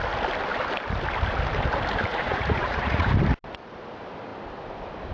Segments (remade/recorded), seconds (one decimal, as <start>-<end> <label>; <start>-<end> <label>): 0.0-2.1 recorded; 2.1-3.1 remade; 3.1-5.1 recorded